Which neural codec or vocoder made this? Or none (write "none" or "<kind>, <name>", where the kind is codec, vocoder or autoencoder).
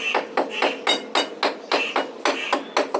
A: none